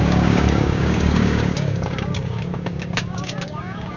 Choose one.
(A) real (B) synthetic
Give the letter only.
B